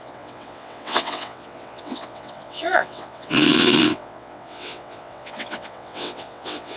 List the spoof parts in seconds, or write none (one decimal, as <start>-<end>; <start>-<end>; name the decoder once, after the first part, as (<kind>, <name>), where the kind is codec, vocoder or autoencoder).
0.0-6.8 (vocoder, WaveNeXt)